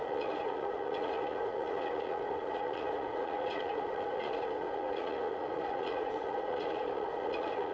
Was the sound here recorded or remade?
remade